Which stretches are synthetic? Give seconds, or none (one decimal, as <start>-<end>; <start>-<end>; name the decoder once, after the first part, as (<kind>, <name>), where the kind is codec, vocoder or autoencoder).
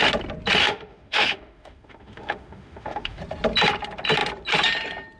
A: 0.6-3.2 (autoencoder, DAC-VAE)